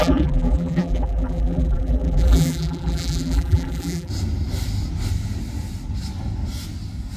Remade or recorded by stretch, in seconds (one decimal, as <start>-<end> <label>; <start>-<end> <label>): 0.0-4.1 remade; 4.1-7.2 recorded